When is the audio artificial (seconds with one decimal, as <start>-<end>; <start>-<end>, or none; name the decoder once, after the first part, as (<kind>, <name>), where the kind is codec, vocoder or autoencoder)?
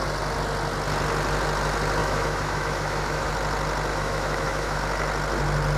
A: 2.0-3.3 (autoencoder, DAC-VAE); 3.9-4.8